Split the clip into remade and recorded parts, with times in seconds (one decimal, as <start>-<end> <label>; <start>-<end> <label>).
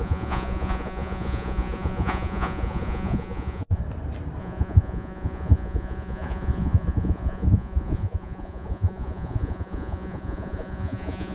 0.0-3.8 remade; 3.8-4.4 recorded; 4.4-11.3 remade